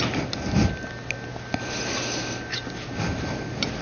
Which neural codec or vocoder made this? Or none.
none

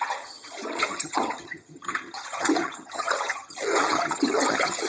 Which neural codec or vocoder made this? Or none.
vocoder, HiFi-GAN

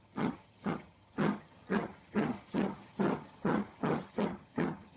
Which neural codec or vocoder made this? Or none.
vocoder, HiFi-GAN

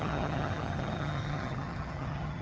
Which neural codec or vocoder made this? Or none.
vocoder, HiFi-GAN